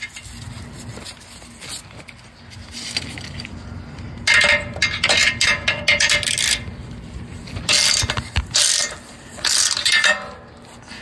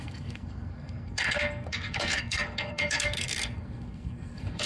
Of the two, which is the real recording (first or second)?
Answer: first